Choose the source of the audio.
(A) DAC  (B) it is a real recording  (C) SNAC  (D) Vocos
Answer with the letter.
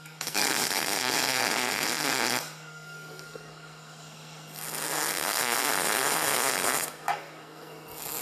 C